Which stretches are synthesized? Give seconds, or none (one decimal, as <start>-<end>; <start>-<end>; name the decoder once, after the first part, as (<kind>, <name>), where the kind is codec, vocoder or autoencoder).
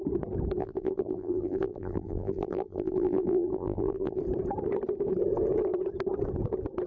0.6-4.2 (vocoder, BigVGAN v2)